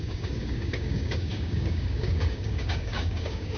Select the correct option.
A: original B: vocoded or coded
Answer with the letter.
B